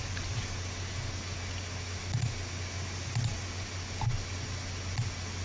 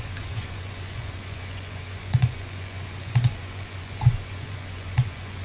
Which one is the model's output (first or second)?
second